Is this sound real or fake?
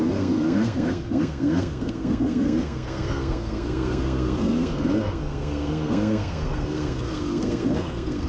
fake